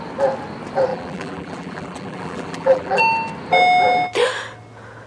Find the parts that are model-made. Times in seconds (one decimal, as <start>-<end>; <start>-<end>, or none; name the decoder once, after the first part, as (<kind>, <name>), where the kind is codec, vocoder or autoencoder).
0.9-3.0 (vocoder, BigVGAN v2)